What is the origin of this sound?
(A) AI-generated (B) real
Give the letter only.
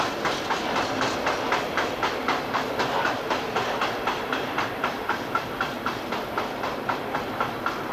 A